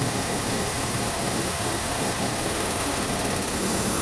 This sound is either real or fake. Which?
fake